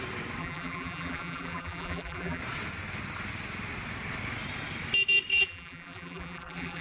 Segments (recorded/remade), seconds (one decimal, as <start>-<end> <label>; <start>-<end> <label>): 0.0-0.4 recorded; 0.4-2.4 remade; 2.4-5.3 recorded; 5.3-6.8 remade